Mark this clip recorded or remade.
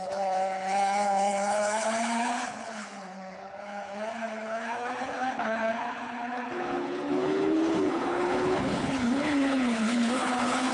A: remade